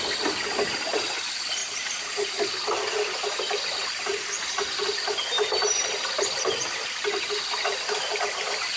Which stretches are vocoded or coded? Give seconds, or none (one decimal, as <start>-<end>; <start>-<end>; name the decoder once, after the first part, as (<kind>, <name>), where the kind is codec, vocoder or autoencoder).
1.6-2.3 (vocoder, Vocos)